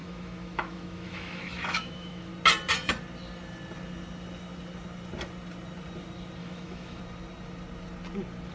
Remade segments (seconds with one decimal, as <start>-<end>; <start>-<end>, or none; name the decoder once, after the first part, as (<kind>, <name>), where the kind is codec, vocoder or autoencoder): 0.0-2.3 (autoencoder, DAC-VAE); 6.4-7.0